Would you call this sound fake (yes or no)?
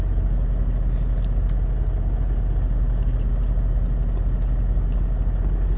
no